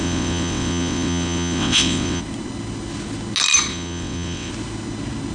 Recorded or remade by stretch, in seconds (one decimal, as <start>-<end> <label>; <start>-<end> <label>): 0.0-2.2 remade; 2.2-3.7 recorded; 3.7-4.5 remade; 4.5-5.3 recorded